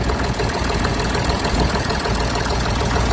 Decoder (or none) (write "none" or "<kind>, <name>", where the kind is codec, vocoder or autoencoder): vocoder, Vocos